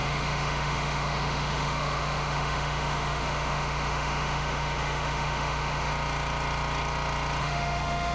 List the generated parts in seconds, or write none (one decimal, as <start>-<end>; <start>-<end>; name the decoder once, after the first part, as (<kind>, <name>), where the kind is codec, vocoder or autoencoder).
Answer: 0.0-5.9 (autoencoder, DAC-VAE); 7.4-8.1